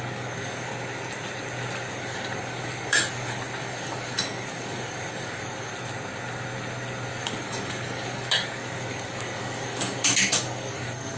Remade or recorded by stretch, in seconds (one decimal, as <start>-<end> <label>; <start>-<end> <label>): 0.0-0.7 remade; 0.7-1.9 recorded; 1.9-5.7 remade; 5.7-7.1 recorded; 7.1-11.2 remade